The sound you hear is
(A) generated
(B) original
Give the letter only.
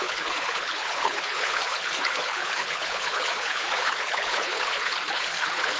A